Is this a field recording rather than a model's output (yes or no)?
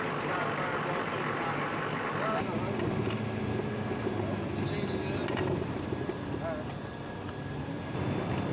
yes